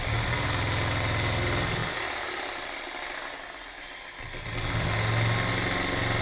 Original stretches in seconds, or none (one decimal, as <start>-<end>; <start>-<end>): 0.0-6.2